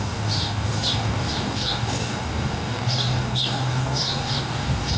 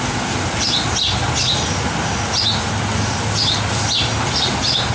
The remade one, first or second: first